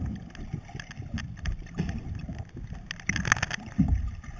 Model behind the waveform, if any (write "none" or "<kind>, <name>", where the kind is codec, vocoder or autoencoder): none